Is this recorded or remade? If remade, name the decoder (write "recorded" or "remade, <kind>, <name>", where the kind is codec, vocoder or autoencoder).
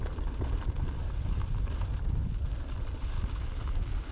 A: recorded